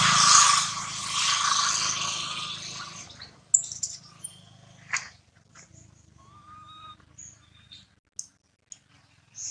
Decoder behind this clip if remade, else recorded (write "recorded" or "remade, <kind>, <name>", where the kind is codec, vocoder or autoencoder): recorded